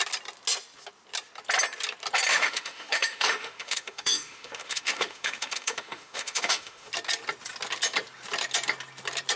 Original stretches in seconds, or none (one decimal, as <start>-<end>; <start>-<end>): 0.0-2.3; 6.9-9.4

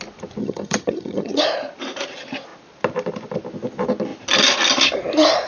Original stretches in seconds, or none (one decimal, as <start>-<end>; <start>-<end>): 0.0-0.4; 1.4-5.5

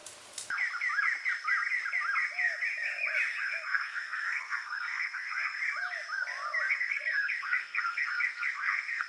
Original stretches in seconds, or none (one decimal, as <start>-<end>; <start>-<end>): 0.0-3.4; 5.6-6.7

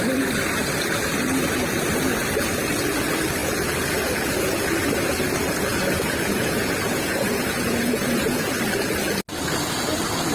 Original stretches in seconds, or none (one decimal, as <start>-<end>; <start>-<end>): 0.0-5.7; 8.5-10.3

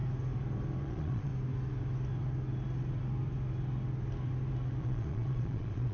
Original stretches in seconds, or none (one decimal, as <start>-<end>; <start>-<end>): 0.0-0.8; 1.3-4.8

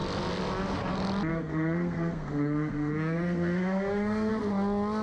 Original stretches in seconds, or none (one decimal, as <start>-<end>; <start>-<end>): 0.0-1.3; 4.3-5.0